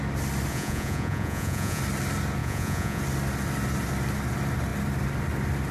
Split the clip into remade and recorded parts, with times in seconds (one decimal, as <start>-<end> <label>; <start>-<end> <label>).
0.0-0.5 recorded; 0.5-1.8 remade; 1.8-2.4 recorded; 2.4-3.0 remade; 3.0-5.7 recorded